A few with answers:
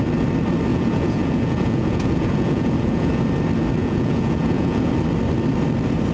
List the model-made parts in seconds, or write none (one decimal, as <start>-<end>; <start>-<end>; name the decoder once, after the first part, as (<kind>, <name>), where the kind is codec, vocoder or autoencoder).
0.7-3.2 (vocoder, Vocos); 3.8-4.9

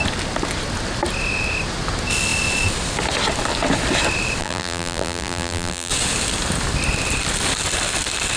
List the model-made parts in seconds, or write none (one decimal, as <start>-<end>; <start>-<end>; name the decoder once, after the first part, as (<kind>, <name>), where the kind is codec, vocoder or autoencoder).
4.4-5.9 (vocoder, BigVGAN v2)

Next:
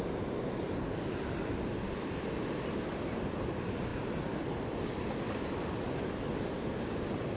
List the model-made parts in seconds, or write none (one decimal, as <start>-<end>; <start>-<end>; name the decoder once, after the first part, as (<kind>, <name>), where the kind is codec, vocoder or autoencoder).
none